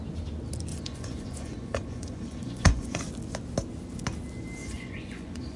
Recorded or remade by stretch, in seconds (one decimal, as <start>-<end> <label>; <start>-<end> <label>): 0.0-0.7 recorded; 0.7-3.0 remade; 3.0-4.6 recorded; 4.6-5.6 remade